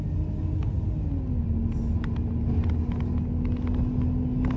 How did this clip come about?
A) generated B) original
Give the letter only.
B